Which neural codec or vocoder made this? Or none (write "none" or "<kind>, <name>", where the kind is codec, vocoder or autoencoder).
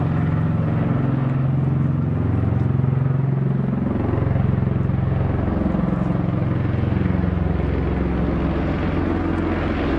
none